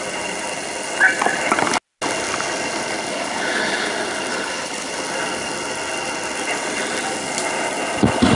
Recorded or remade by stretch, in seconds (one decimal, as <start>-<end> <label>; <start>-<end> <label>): 0.0-3.1 recorded; 3.1-3.9 remade; 3.9-4.3 recorded; 4.3-4.9 remade; 4.9-8.4 recorded